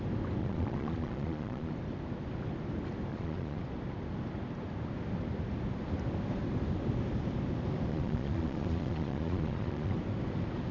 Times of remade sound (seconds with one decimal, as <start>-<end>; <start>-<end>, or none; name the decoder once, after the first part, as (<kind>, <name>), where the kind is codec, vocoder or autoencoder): 0.4-1.7 (vocoder, Vocos); 3.1-3.6; 7.9-10.0